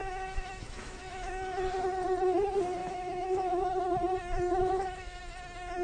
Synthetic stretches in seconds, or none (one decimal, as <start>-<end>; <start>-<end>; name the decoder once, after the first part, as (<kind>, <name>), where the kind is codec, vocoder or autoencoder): 0.0-1.3 (autoencoder, DAC-VAE); 2.8-3.6; 4.6-5.2